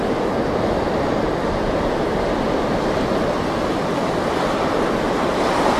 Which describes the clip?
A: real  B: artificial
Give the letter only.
A